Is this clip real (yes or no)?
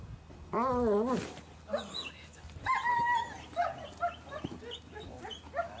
yes